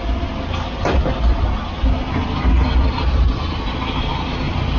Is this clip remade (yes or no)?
no